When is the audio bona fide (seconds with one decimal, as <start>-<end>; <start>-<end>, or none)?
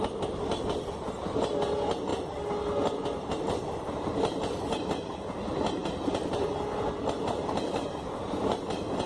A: 0.0-9.1